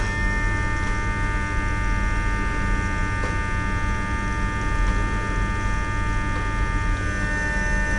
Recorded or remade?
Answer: recorded